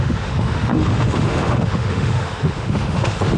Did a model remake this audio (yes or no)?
yes